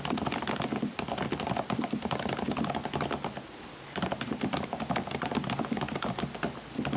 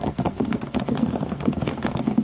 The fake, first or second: second